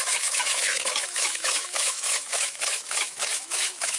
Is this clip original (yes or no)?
no